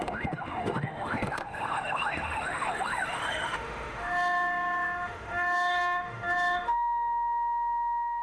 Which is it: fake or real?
fake